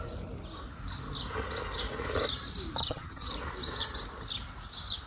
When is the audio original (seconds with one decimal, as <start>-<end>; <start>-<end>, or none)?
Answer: 0.0-2.8; 3.3-5.1